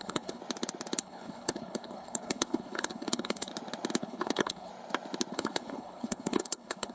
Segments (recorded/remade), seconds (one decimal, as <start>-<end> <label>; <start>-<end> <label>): 0.0-0.4 remade; 0.4-1.0 recorded; 1.0-3.5 remade; 3.5-4.0 recorded; 4.0-4.7 remade; 4.7-5.3 recorded; 5.3-6.9 remade